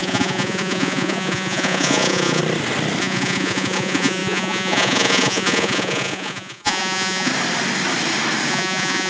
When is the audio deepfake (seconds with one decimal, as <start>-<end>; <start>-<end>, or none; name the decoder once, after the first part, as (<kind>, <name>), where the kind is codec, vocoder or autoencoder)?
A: 0.0-2.4 (vocoder, Vocos); 3.0-7.3; 8.5-9.1